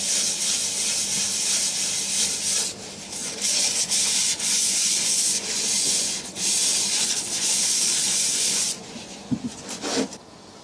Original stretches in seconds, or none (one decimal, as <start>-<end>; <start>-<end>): 0.0-3.2; 6.3-6.7; 10.0-10.6